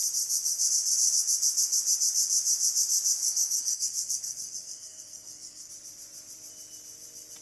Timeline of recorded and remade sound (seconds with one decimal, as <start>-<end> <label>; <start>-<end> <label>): 0.0-3.2 recorded; 3.2-5.7 remade; 5.7-7.4 recorded